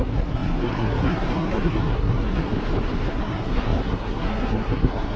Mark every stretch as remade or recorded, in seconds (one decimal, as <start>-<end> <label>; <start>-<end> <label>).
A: 0.0-2.5 remade; 2.5-3.1 recorded; 3.1-5.2 remade